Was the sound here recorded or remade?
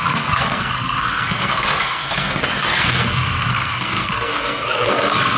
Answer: remade